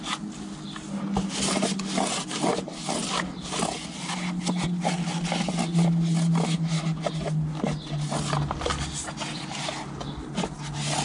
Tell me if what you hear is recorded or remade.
recorded